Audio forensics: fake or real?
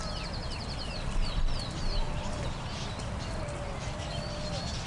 real